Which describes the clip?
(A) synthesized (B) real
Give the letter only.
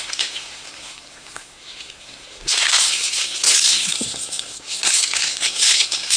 A